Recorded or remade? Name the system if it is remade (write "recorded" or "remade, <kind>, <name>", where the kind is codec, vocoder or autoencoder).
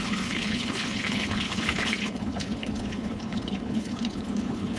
remade, codec, HILCodec